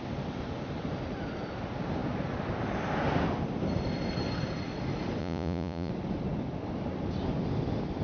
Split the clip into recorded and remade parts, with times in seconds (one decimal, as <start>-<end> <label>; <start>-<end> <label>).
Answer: 0.0-5.2 recorded; 5.2-5.9 remade; 5.9-8.0 recorded